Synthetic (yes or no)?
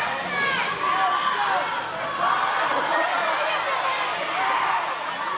no